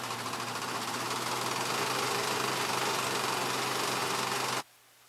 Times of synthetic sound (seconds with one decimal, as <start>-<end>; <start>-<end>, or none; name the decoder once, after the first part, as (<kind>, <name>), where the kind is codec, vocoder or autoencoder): none